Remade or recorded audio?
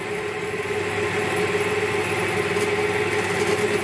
recorded